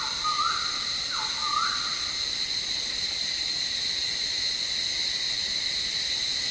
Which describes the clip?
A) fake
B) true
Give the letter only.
B